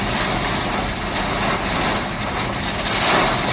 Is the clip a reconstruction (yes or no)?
no